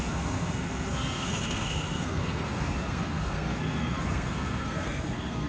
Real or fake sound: fake